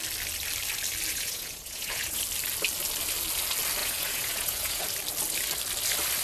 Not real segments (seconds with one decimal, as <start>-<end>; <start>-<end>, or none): 1.1-2.2; 3.8-4.8